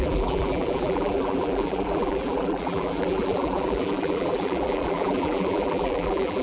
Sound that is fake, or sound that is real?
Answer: fake